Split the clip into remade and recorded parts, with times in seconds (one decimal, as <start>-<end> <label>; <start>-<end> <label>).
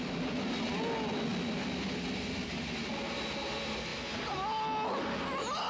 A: 0.0-5.7 recorded